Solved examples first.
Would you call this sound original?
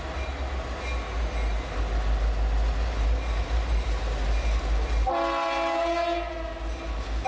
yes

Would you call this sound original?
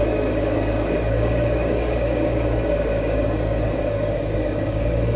no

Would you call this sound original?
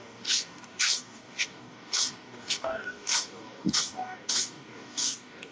no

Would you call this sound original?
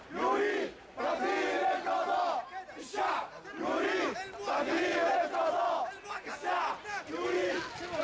yes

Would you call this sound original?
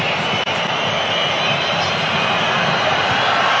yes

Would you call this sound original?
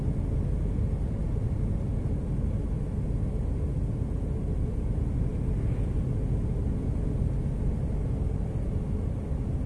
yes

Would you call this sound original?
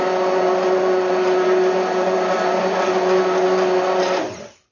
yes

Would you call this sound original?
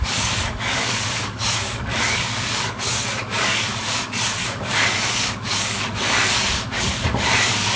no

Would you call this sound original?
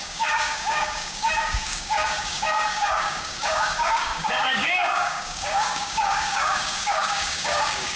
no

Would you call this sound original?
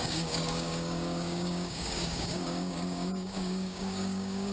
no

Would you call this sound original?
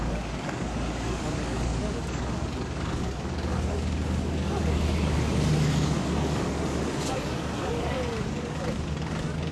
no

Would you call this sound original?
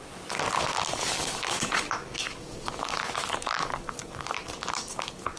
no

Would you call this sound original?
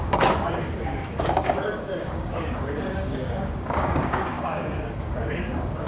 no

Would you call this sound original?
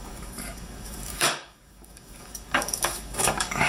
no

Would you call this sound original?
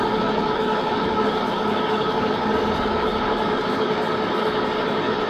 no